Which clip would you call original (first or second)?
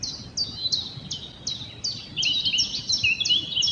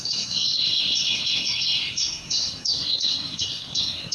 first